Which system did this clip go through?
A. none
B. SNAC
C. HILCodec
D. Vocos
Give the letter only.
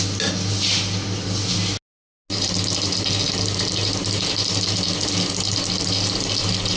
A